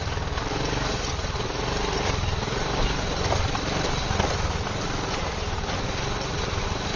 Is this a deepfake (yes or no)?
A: no